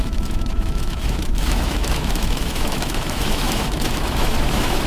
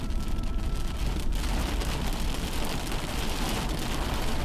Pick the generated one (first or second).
first